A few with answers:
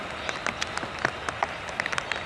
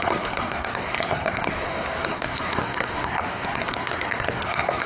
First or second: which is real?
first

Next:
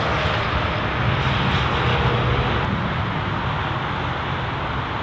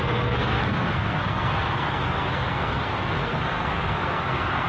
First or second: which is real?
first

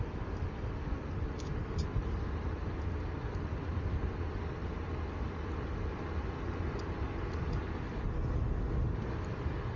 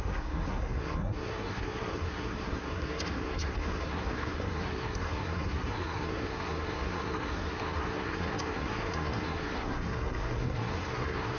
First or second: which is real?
first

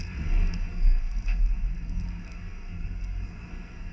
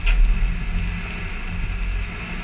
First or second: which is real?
second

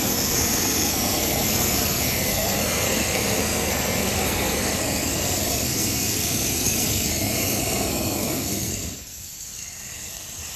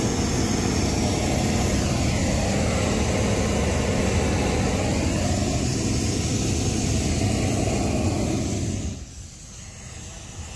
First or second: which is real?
second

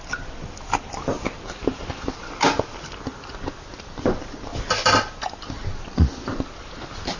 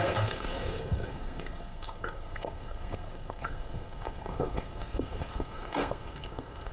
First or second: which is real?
first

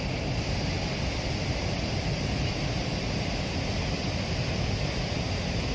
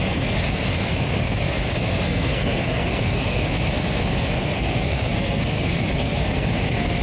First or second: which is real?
first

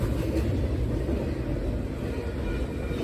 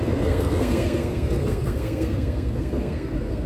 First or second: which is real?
first